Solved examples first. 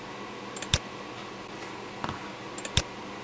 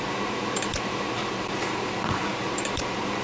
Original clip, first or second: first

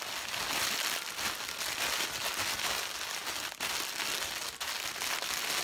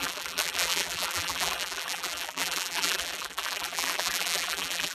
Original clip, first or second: first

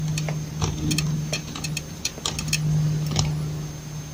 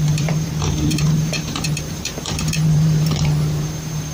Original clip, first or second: first